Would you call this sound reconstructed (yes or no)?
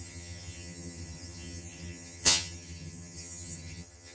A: yes